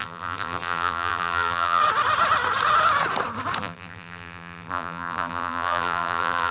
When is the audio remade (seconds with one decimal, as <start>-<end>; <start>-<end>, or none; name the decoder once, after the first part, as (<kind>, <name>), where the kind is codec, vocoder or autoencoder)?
0.0-1.8 (vocoder, BigVGAN v2); 3.6-6.5